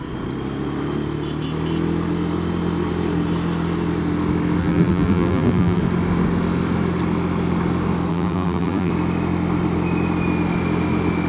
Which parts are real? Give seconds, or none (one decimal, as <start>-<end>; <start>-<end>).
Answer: 0.0-4.6; 5.8-8.1; 8.9-11.3